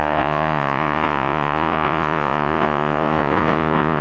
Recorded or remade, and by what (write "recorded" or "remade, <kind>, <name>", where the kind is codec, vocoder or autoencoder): remade, vocoder, Vocos